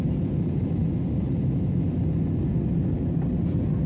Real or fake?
real